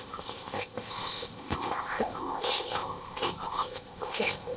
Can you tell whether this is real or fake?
fake